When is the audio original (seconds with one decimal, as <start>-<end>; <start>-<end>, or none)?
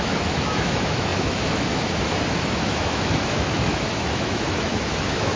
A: none